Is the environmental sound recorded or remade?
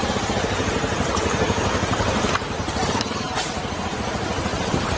remade